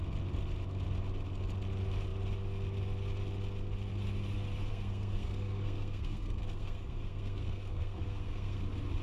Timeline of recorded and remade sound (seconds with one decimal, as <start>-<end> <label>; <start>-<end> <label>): 0.0-4.7 recorded; 4.7-8.6 remade; 8.6-9.0 recorded